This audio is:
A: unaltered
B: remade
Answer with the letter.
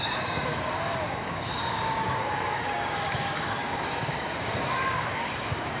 B